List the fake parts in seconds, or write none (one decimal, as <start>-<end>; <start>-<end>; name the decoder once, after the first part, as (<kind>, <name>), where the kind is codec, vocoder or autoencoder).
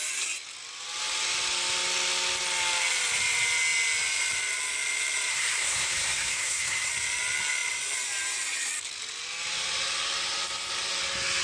5.3-6.9 (codec, SNAC)